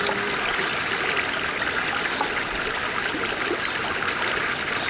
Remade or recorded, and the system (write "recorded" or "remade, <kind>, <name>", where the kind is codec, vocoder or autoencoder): recorded